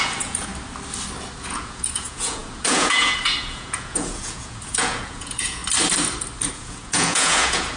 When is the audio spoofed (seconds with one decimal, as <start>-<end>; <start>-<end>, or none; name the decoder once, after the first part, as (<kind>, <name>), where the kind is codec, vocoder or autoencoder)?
0.0-0.5 (vocoder, Vocos); 1.4-5.6; 6.5-7.8